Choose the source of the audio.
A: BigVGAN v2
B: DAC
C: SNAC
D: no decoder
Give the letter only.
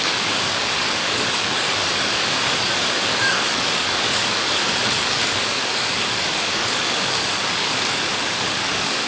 B